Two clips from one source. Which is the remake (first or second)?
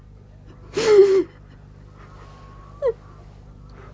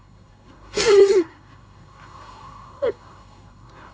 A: second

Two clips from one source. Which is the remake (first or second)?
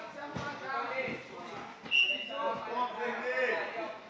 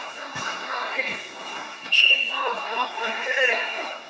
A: second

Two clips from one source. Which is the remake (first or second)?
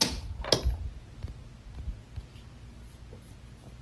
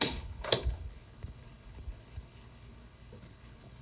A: second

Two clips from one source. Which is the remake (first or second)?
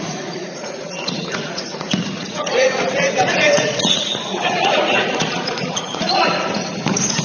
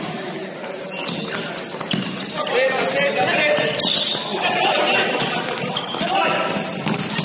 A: first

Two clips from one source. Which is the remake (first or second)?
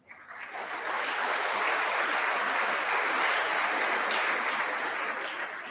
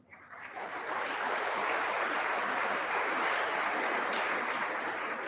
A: second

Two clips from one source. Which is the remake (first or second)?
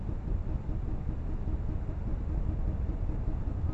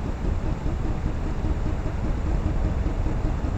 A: second